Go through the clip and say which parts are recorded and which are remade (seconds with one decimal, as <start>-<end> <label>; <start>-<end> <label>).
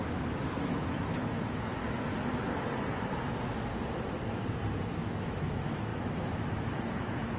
0.0-1.8 remade; 1.8-4.8 recorded; 4.8-7.4 remade